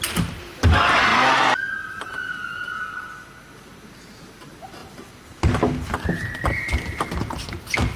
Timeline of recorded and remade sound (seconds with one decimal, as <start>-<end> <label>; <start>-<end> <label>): 0.0-8.0 recorded